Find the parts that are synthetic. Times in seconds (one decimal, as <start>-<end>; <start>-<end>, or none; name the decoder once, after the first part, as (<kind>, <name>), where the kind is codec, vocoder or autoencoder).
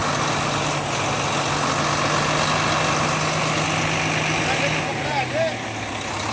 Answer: none